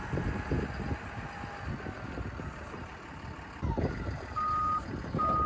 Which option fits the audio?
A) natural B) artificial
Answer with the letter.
A